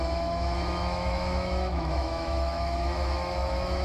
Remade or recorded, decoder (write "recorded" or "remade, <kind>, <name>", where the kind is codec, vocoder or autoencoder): remade, autoencoder, DAC-VAE